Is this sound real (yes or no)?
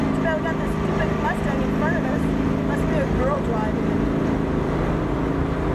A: yes